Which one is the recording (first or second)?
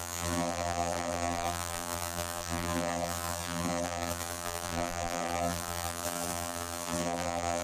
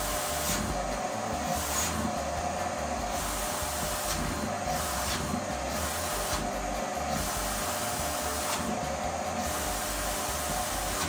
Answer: second